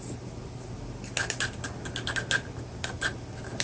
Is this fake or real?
real